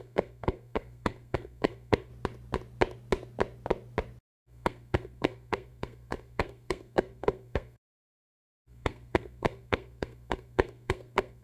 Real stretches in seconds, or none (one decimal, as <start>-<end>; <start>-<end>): 2.1-4.4